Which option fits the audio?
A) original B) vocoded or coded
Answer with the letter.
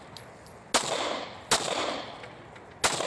A